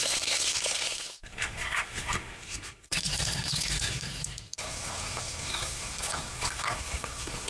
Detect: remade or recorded remade